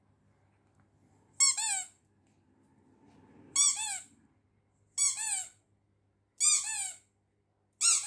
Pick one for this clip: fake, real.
real